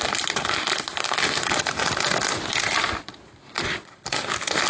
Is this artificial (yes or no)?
no